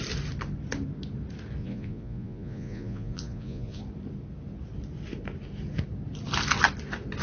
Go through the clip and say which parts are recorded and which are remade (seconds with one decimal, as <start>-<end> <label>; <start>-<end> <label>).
0.0-1.6 recorded; 1.6-3.8 remade; 3.8-7.2 recorded